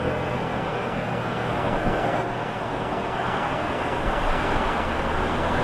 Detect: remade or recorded remade